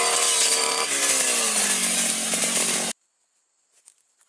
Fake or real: real